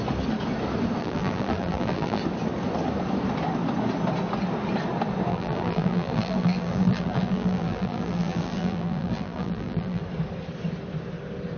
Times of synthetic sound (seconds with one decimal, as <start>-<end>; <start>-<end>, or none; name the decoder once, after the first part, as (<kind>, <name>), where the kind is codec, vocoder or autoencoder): 1.0-2.2 (vocoder, BigVGAN v2); 5.3-10.0